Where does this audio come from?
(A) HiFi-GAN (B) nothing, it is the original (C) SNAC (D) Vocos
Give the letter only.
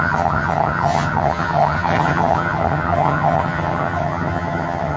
A